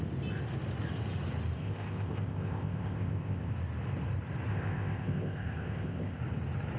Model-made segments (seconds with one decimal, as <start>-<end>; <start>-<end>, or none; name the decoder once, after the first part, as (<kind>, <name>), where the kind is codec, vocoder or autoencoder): 1.6-3.5 (codec, ZipCodec); 4.5-6.2